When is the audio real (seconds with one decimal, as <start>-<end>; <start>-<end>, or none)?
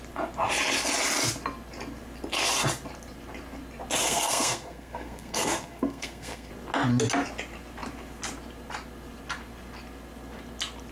0.0-4.0; 6.5-10.9